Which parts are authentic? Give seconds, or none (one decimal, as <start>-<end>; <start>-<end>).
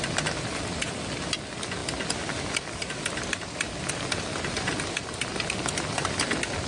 0.0-6.7